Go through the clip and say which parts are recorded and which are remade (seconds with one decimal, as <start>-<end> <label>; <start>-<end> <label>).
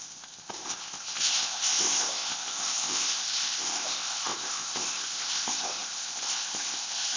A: 0.0-7.2 remade